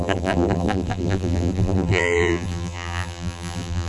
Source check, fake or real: fake